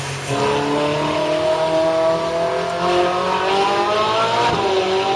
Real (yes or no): yes